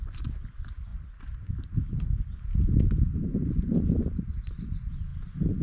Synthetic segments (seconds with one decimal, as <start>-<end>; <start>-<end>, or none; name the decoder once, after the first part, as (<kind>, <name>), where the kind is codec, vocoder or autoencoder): none